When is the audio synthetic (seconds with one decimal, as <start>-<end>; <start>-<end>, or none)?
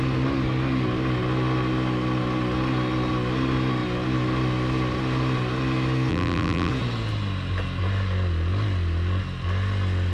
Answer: 6.1-6.7